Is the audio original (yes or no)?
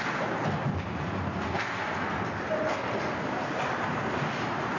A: yes